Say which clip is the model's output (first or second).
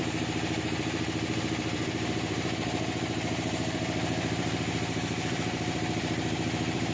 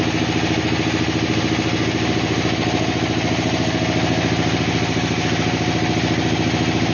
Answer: first